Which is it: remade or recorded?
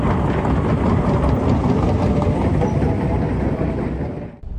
recorded